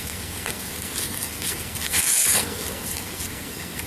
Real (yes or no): no